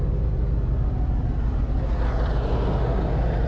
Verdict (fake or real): real